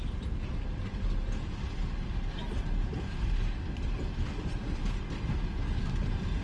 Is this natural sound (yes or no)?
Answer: yes